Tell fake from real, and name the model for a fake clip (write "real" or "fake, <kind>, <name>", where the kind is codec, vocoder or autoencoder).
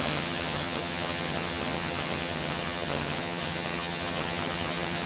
fake, vocoder, HiFi-GAN